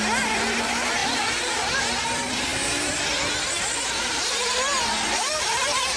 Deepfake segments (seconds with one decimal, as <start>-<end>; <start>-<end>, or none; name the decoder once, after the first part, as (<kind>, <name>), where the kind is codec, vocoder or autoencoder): 0.0-2.5 (vocoder, BigVGAN v2); 3.5-6.0